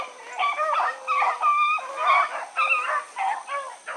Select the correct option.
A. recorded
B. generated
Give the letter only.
A